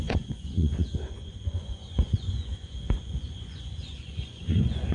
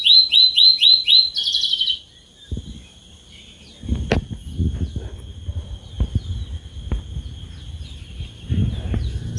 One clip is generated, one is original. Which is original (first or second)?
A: second